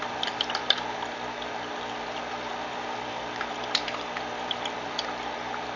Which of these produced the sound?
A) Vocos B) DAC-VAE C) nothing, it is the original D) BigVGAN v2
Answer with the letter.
D